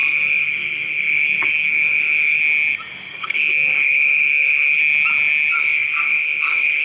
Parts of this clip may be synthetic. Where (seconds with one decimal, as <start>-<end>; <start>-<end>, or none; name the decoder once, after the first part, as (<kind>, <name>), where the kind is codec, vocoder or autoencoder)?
0.0-2.4 (codec, SNAC); 3.1-4.8; 5.5-6.8